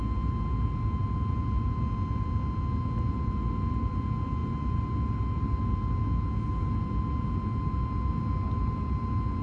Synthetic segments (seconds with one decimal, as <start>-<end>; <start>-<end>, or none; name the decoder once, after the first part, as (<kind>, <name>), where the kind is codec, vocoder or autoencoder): none